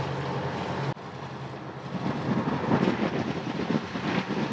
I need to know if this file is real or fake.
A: real